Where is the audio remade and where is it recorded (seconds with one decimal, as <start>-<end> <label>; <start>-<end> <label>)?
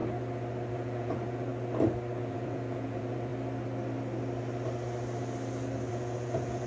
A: 0.0-0.7 recorded; 0.7-1.5 remade; 1.5-2.2 recorded; 2.2-3.3 remade; 3.3-5.9 recorded; 5.9-6.7 remade